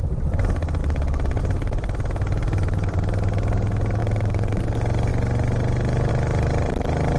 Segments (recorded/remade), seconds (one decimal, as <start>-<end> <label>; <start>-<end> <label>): 0.0-0.8 recorded; 0.8-1.4 remade; 1.4-4.0 recorded; 4.0-4.6 remade; 4.6-7.2 recorded